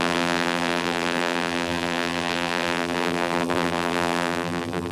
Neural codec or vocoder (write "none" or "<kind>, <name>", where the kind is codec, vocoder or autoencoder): vocoder, BigVGAN v2